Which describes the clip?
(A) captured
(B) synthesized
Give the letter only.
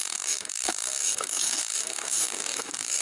B